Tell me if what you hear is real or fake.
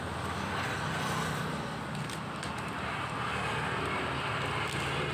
real